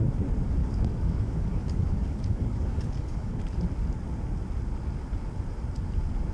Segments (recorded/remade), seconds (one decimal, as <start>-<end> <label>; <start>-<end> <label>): 0.0-0.6 recorded; 0.6-3.4 remade; 3.4-6.3 recorded